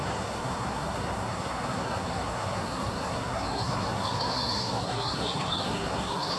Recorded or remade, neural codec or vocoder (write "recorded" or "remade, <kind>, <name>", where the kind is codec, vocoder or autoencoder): remade, codec, SNAC